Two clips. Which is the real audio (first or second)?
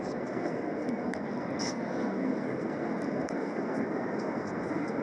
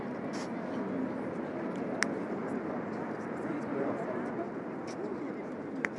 second